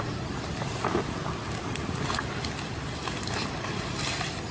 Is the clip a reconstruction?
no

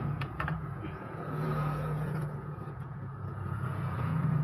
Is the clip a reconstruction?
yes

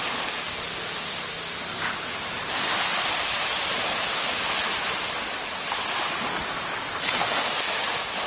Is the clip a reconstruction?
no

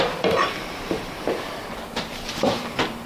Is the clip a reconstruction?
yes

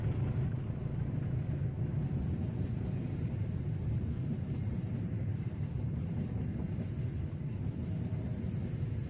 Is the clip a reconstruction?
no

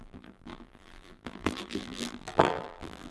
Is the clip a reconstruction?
yes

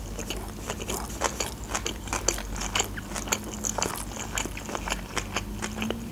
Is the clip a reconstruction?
no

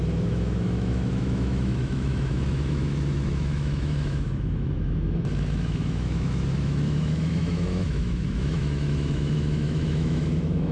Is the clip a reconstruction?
yes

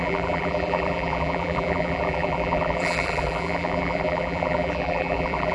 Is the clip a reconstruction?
yes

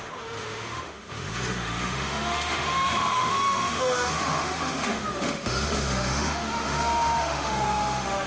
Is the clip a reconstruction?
yes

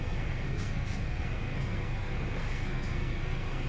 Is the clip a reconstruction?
yes